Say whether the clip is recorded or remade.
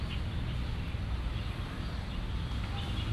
recorded